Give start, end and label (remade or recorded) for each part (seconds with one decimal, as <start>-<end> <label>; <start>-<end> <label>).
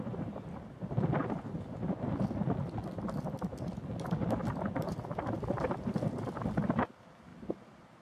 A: 0.0-8.0 recorded